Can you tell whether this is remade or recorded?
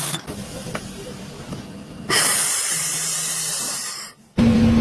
remade